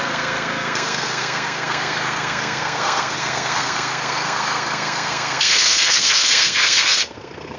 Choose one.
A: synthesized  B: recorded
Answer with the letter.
A